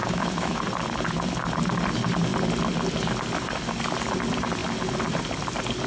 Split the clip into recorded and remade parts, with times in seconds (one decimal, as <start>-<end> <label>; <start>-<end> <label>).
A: 0.0-0.6 remade; 0.6-5.9 recorded